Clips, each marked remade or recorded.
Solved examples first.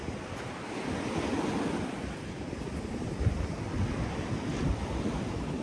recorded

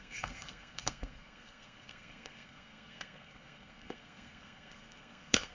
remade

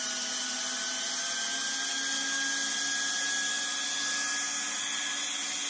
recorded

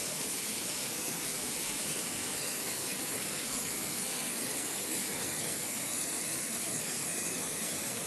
remade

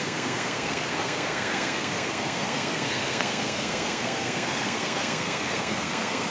remade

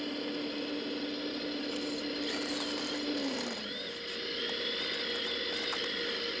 recorded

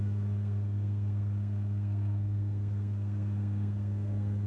remade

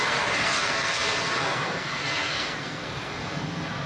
remade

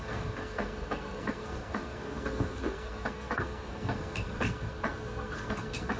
remade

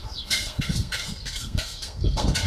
remade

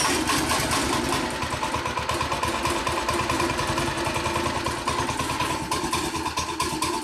recorded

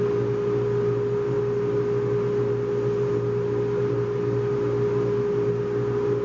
recorded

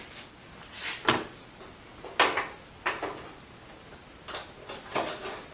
recorded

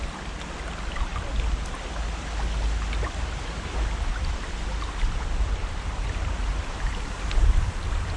recorded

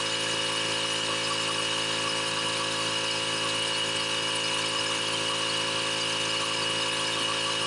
recorded